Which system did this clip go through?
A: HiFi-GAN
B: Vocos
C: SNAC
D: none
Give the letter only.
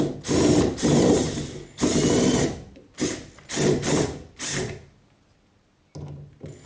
D